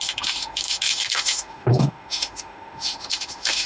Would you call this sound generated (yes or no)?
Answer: yes